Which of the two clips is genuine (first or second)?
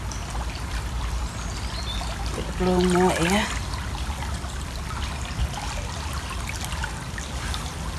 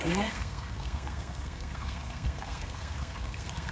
first